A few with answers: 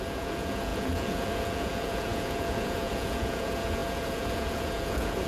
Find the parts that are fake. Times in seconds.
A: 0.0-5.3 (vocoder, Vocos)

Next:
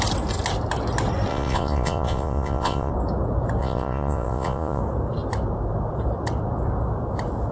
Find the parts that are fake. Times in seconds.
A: 1.3-2.9 (vocoder, Vocos); 3.6-4.8

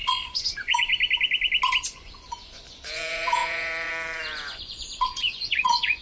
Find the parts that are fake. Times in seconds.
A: 0.0-0.9 (vocoder, Vocos); 1.8-6.0

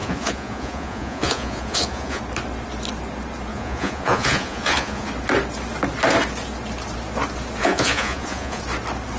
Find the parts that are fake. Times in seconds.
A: 0.0-2.2 (vocoder, Vocos); 3.5-5.1; 7.6-8.6

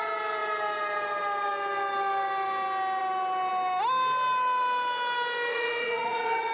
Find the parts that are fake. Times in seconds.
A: 5.5-6.5 (vocoder, Vocos)

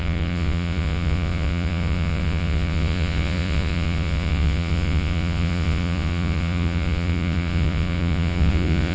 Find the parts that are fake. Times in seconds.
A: 0.0-8.9 (vocoder, Vocos)

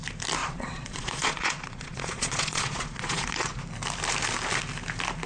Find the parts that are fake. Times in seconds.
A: 0.4-3.6 (vocoder, Vocos)